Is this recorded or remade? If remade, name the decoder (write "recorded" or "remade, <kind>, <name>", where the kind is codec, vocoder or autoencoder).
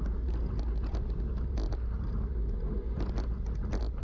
recorded